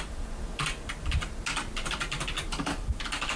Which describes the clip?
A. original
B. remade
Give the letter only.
A